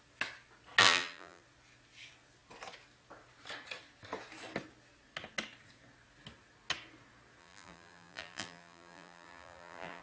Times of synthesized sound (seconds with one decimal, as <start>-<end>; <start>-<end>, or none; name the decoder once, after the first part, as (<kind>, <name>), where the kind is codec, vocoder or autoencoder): 0.8-1.4 (vocoder, BigVGAN v2); 7.4-10.0